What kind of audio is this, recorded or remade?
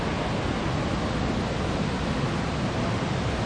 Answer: recorded